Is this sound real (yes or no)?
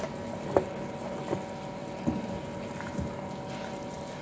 yes